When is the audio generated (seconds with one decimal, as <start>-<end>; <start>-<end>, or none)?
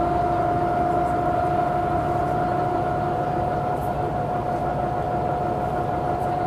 none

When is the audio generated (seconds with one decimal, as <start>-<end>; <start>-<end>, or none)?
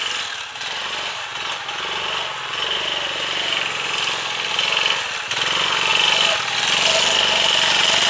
none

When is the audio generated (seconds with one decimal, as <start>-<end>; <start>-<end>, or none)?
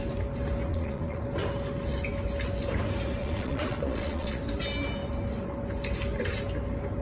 0.7-1.2; 3.2-4.4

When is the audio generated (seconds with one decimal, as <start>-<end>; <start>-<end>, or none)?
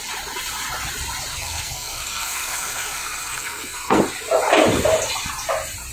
1.3-4.0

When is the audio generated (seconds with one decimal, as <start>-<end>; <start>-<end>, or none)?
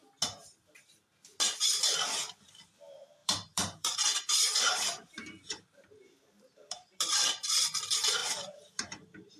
3.2-7.5; 8.2-9.4